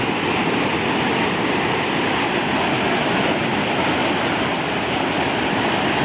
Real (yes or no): yes